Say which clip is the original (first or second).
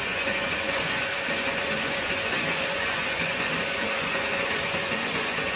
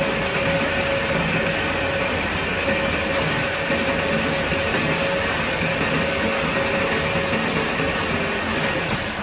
second